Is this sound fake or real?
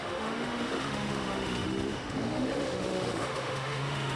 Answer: fake